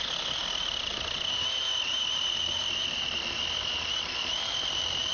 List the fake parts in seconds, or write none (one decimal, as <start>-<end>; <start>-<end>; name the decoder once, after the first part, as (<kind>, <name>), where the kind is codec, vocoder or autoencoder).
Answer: 0.4-2.3 (vocoder, BigVGAN v2)